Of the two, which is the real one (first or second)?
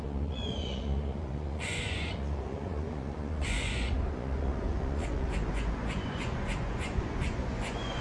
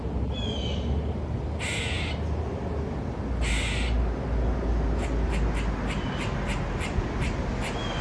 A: second